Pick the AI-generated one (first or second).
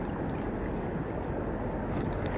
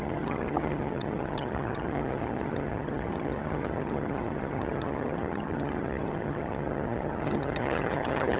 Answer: second